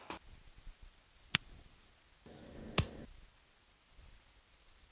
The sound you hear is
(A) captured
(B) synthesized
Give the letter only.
A